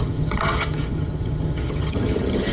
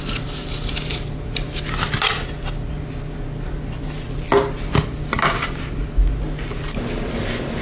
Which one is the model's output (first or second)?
first